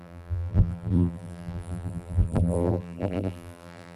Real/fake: fake